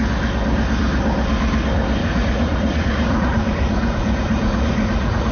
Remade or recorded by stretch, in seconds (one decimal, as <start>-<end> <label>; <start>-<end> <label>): 0.0-2.0 recorded; 2.0-5.3 remade